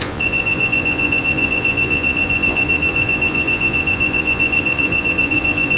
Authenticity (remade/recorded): remade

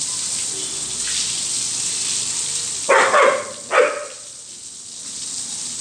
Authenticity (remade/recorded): recorded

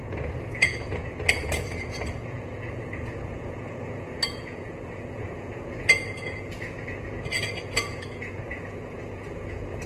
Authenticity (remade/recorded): remade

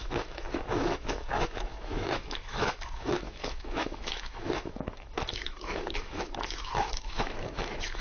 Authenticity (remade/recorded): remade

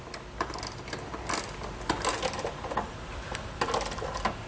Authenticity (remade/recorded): recorded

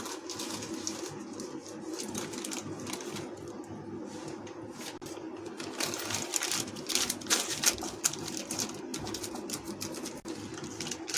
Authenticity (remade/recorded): recorded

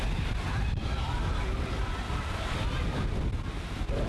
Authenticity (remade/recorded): recorded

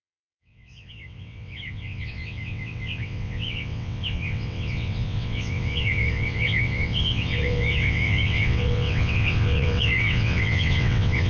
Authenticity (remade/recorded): remade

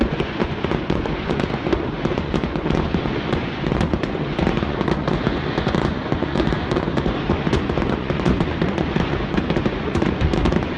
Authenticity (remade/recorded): remade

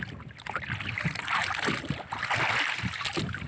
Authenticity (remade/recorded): recorded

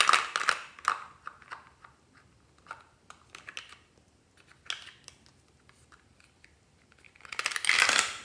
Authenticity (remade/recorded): recorded